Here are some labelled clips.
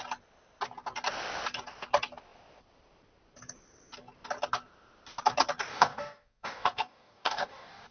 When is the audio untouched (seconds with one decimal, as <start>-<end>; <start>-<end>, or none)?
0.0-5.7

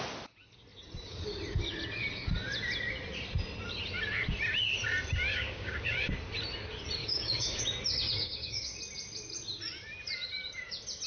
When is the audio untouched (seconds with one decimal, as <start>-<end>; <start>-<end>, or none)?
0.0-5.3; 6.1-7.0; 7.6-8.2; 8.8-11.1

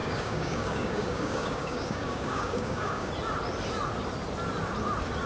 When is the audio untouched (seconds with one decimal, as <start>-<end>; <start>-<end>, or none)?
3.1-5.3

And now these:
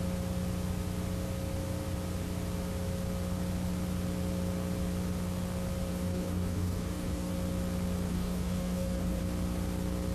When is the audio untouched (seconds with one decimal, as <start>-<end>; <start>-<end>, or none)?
0.0-5.9; 7.3-8.1; 9.2-10.1

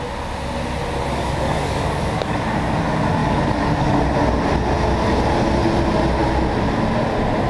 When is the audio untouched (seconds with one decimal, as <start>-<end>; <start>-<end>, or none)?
0.0-1.1; 2.8-3.2; 4.0-7.5

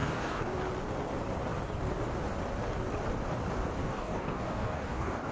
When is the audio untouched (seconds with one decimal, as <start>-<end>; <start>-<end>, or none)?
0.6-3.8

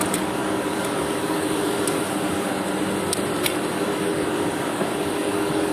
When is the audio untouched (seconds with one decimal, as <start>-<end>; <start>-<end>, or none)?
2.5-3.7